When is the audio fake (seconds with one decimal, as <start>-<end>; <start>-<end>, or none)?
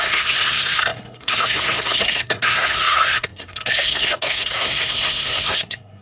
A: 0.0-6.0